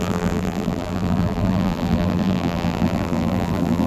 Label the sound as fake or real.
fake